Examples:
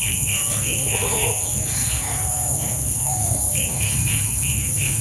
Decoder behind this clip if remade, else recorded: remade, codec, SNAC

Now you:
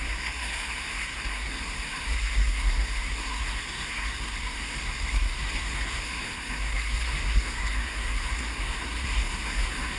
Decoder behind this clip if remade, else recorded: remade, codec, SNAC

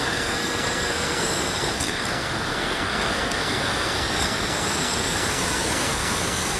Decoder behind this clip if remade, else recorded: remade, codec, SNAC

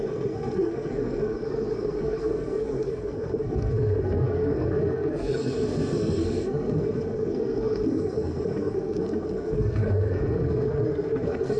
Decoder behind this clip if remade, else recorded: remade, codec, SNAC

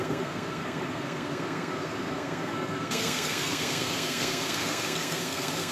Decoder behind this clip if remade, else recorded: remade, codec, SNAC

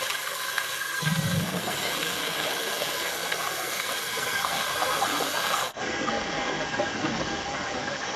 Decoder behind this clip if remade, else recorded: remade, codec, SNAC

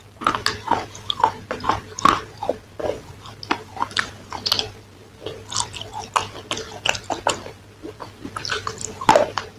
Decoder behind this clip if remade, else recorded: recorded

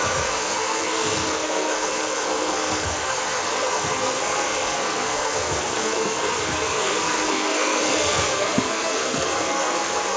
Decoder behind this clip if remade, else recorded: remade, codec, SNAC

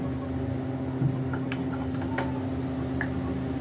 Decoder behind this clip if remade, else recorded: recorded